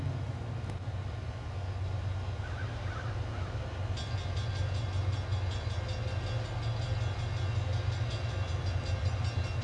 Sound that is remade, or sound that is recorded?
recorded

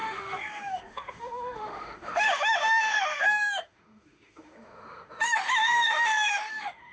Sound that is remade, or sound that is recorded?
remade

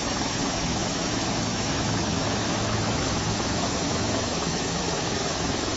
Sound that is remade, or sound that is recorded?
remade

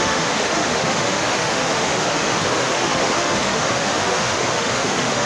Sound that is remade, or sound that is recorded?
remade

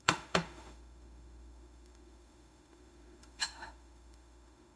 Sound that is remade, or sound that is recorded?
remade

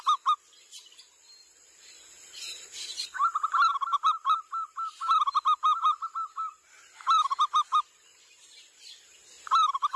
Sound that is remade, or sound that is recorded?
recorded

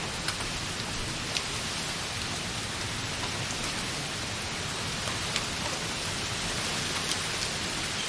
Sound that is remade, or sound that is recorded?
recorded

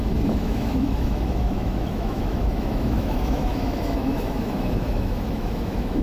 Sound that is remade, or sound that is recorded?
remade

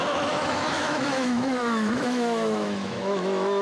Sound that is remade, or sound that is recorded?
remade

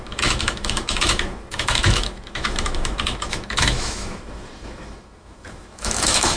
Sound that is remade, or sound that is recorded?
remade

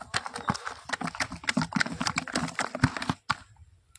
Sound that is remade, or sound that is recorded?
recorded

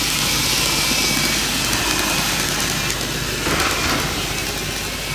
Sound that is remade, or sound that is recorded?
recorded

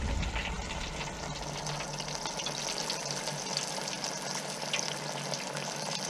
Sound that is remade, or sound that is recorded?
recorded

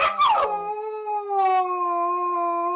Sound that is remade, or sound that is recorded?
recorded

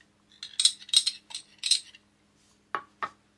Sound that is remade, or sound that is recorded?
recorded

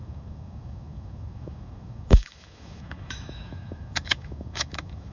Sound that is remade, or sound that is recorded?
remade